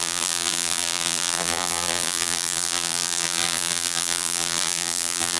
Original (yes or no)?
no